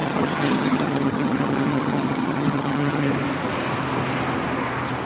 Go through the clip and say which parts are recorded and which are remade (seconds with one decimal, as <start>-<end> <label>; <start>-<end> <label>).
0.0-3.1 remade; 3.1-5.1 recorded